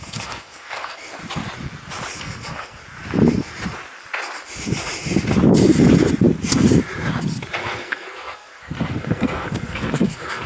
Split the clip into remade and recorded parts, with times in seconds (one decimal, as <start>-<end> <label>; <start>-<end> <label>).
0.0-1.2 remade; 1.2-2.2 recorded; 2.2-2.8 remade; 2.8-7.6 recorded; 7.6-10.5 remade